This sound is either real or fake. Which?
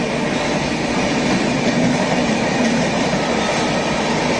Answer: real